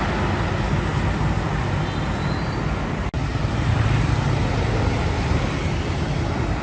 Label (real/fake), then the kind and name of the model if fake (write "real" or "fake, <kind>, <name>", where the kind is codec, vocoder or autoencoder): real